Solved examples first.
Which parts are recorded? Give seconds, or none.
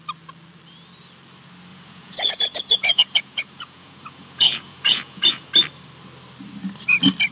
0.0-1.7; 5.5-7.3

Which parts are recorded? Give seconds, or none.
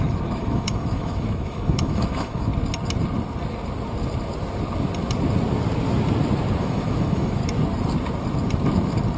2.5-6.6; 7.4-9.2